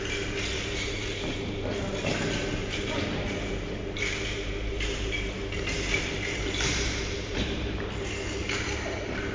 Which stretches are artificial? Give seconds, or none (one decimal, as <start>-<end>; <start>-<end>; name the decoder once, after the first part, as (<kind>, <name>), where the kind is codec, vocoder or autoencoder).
0.5-1.4 (vocoder, BigVGAN v2); 2.6-7.7; 8.4-9.3